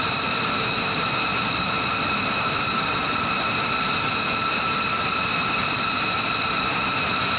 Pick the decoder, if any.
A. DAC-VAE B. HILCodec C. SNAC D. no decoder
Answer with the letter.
D